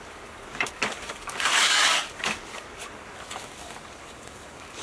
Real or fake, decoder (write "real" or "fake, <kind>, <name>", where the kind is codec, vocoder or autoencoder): fake, codec, DAC